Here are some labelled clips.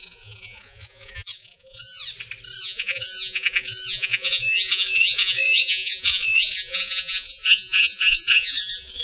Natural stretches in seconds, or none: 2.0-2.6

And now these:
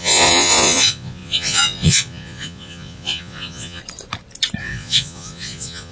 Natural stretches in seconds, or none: 3.8-4.6

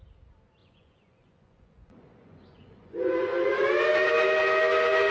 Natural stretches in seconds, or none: 0.0-0.6; 3.7-5.1

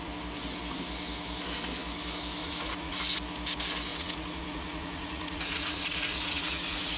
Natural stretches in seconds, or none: 0.0-2.4; 3.0-3.9

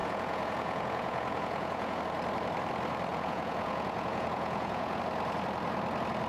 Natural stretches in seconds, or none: 2.0-3.1; 5.0-6.3

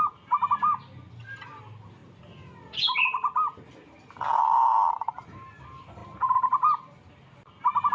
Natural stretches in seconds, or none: 0.0-7.9

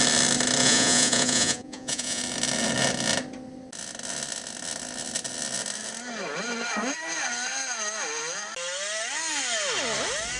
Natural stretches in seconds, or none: 0.0-0.6; 2.2-10.4

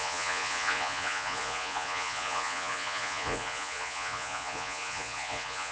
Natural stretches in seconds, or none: none